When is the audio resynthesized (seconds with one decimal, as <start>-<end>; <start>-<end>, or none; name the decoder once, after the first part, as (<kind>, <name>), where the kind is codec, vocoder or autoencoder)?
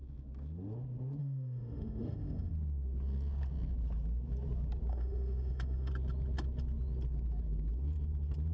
1.2-2.5 (autoencoder, DAC-VAE); 4.9-5.9